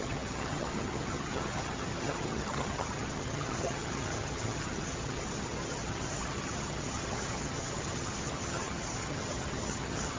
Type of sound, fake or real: fake